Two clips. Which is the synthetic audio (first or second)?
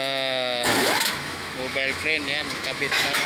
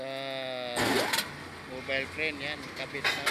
first